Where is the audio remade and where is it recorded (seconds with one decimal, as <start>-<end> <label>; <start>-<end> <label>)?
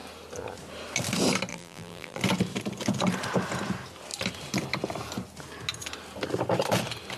0.0-1.5 recorded; 1.5-2.2 remade; 2.2-7.2 recorded